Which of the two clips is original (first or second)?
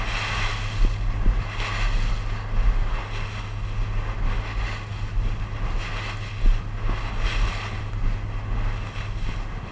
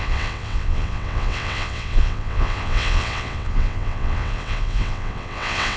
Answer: first